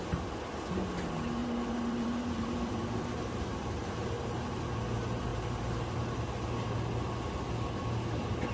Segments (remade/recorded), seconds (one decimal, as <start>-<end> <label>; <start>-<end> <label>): 0.0-1.4 recorded; 1.4-4.6 remade; 4.6-5.3 recorded; 5.3-6.2 remade; 6.2-8.5 recorded